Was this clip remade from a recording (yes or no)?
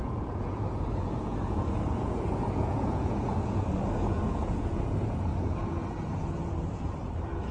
yes